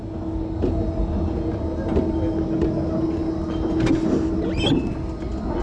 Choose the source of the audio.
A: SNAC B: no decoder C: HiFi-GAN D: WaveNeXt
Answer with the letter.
B